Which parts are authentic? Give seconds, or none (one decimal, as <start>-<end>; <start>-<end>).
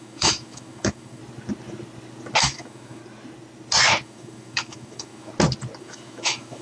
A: 1.2-2.4; 3.0-4.0; 5.3-5.8